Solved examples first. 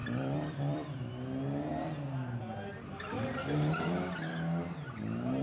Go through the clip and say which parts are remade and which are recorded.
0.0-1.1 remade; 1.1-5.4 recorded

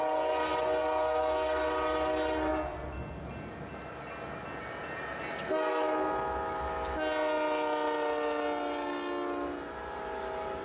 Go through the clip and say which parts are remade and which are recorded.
0.0-10.6 recorded

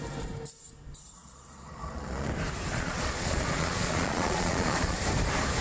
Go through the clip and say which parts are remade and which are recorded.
0.0-1.2 recorded; 1.2-2.3 remade; 2.3-2.7 recorded; 2.7-5.0 remade; 5.0-5.6 recorded

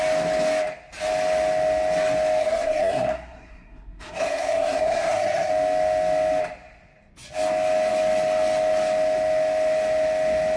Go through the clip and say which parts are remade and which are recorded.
0.0-2.4 recorded; 2.4-5.5 remade; 5.5-10.6 recorded